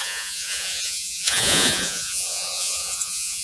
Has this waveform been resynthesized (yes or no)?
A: yes